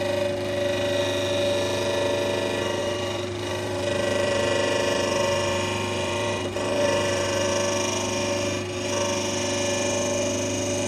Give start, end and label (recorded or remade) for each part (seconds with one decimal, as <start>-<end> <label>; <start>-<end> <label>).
0.0-2.8 recorded; 2.8-7.5 remade; 7.5-10.9 recorded